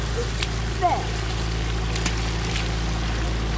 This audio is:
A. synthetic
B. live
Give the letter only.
B